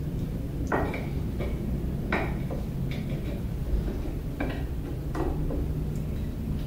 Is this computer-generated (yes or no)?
no